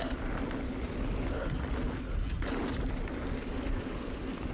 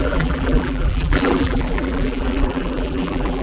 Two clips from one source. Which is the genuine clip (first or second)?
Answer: first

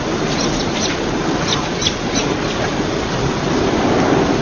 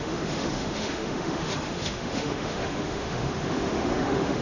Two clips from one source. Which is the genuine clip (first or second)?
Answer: first